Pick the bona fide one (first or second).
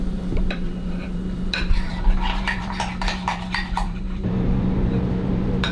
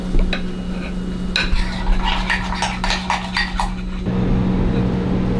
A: second